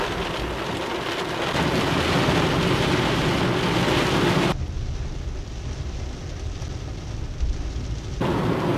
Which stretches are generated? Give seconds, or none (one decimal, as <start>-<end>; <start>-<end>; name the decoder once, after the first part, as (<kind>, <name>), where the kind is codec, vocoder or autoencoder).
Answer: none